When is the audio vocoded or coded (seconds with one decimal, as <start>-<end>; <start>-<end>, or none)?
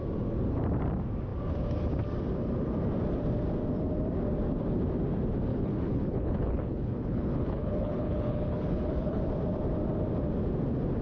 5.5-9.2